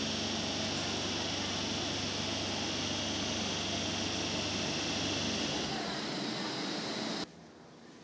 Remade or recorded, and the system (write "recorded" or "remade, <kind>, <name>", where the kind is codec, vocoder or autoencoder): recorded